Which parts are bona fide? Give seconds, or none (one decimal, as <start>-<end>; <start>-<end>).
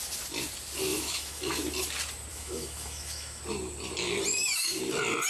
0.0-0.9; 1.6-2.3; 3.4-4.3; 4.8-5.3